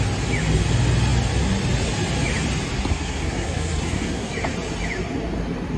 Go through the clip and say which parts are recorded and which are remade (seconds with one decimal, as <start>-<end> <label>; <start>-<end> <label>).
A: 0.0-2.9 recorded; 2.9-4.3 remade; 4.3-5.8 recorded